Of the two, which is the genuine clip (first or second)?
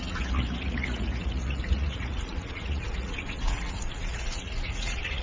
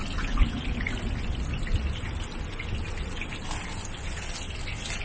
second